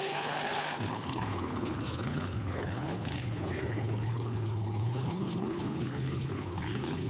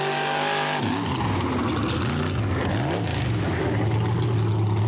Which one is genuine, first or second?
second